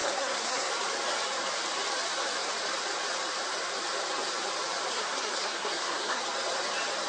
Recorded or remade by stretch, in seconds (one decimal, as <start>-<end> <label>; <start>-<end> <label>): 0.0-0.7 remade; 0.7-4.9 recorded; 4.9-6.2 remade; 6.2-7.1 recorded